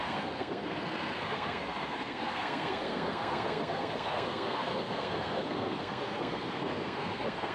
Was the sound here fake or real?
fake